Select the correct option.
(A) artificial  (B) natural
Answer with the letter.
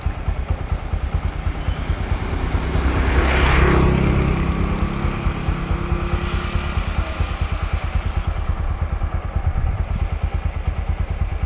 B